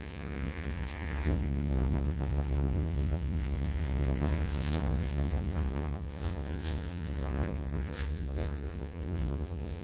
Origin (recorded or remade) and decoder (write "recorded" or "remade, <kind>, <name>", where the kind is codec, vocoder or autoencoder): remade, vocoder, Vocos